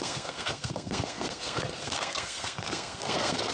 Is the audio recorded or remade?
remade